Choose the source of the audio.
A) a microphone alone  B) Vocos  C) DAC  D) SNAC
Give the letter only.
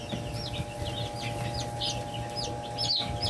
A